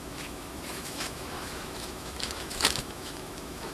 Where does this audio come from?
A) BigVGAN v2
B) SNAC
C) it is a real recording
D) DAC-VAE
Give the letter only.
D